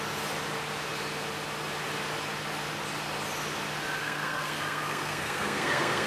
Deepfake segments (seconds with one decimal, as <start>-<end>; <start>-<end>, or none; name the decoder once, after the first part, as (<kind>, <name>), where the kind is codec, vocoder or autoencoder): 4.0-6.1 (codec, SNAC)